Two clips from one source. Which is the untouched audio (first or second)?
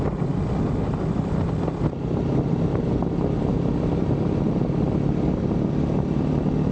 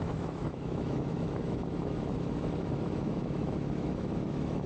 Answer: first